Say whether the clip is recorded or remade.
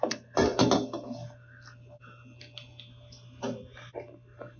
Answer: recorded